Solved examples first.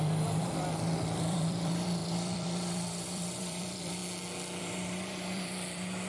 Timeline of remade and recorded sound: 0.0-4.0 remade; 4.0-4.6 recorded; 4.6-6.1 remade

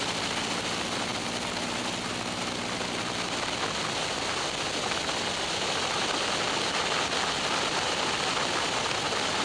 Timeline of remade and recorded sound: 0.0-9.4 recorded

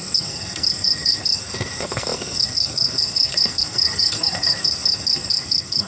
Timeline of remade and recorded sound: 0.0-5.9 remade

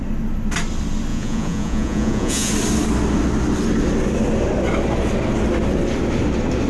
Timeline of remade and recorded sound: 0.0-1.1 recorded; 1.1-2.5 remade; 2.5-6.7 recorded

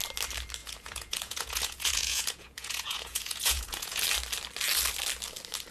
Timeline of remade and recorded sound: 0.0-0.6 recorded; 0.6-4.0 remade; 4.0-5.7 recorded